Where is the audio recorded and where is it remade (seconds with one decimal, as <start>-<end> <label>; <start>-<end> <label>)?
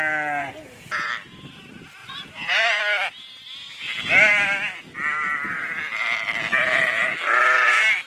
0.0-0.4 recorded; 0.4-1.1 remade; 1.1-2.0 recorded; 2.0-2.8 remade; 2.8-8.1 recorded